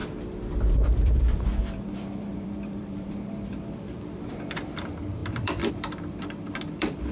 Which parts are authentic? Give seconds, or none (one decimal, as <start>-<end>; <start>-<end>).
none